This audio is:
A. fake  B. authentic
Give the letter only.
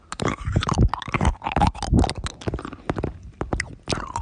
B